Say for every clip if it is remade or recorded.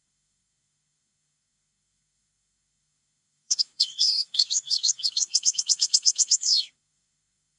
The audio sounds remade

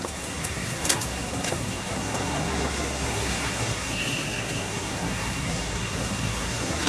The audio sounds remade